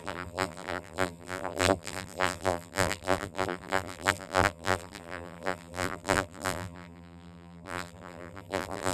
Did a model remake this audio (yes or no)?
yes